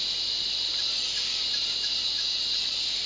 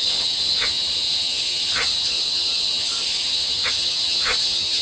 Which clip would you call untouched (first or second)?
first